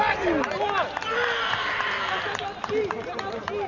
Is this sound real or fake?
real